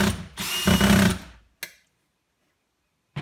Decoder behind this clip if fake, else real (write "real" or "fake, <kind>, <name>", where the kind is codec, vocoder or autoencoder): real